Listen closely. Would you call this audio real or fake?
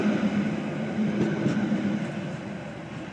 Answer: real